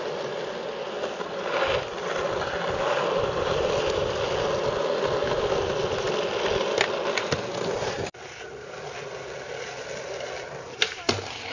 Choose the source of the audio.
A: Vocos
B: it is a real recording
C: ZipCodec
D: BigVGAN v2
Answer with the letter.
B